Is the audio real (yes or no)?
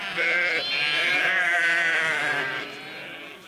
yes